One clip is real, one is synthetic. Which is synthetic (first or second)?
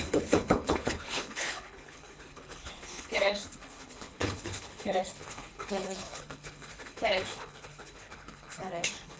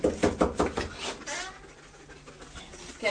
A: first